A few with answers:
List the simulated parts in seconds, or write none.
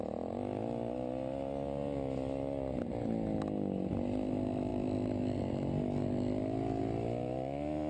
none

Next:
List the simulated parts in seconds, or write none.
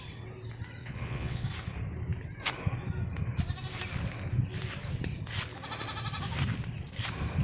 0.8-1.5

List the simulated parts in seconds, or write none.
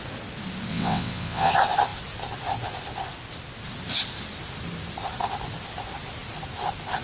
0.7-1.5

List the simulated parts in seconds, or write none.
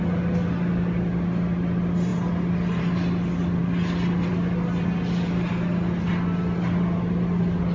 none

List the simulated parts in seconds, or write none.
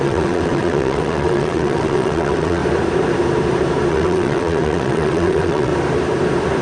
0.0-2.6; 3.9-5.7